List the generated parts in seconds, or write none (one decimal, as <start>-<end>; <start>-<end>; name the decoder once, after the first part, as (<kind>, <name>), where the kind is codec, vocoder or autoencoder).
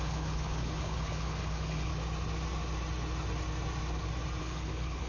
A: 0.0-1.9 (codec, HILCodec); 4.4-5.1